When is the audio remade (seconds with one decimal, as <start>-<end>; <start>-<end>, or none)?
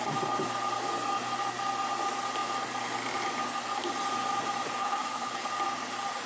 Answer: 4.8-5.5